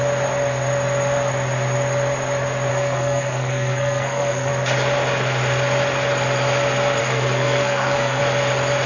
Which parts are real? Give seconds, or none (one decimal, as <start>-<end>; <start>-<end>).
0.0-2.7; 4.5-7.0; 8.2-8.9